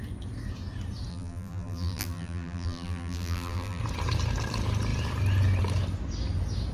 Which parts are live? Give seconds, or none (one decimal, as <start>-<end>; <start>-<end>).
0.0-1.1; 3.8-6.7